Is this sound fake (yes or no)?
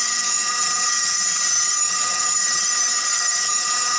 yes